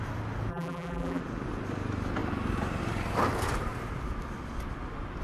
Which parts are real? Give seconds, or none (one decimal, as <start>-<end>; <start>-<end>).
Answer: 0.0-0.5; 1.2-5.2